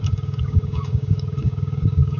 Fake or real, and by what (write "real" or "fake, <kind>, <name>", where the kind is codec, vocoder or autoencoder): fake, codec, DAC